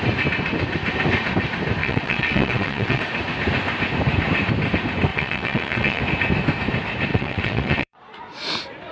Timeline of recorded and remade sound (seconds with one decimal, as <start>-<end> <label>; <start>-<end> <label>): 0.0-1.8 recorded; 1.8-3.0 remade; 3.0-5.1 recorded; 5.1-6.0 remade; 6.0-7.1 recorded; 7.1-8.2 remade; 8.2-8.9 recorded